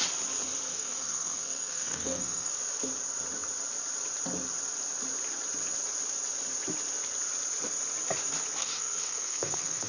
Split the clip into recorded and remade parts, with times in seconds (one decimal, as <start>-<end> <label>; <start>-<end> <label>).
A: 0.0-0.7 recorded; 0.7-2.5 remade; 2.5-8.6 recorded; 8.6-9.9 remade